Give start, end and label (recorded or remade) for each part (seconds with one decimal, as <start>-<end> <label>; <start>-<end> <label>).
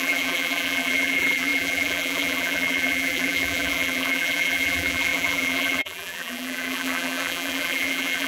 0.0-8.3 remade